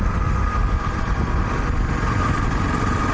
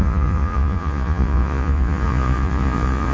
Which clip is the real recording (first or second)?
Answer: first